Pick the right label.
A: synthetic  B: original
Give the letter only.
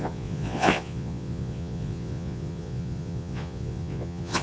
A